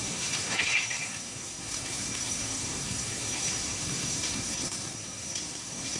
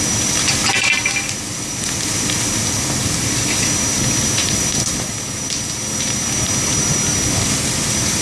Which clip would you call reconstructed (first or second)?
first